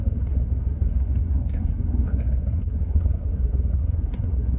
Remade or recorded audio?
remade